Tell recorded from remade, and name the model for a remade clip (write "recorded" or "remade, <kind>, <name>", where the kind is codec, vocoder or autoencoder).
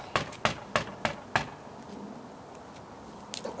recorded